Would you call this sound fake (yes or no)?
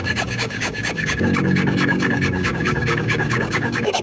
yes